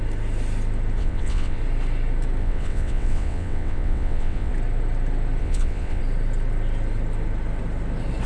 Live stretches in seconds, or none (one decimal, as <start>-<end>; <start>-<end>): 0.0-1.0; 1.6-2.4; 4.5-5.4; 6.0-8.3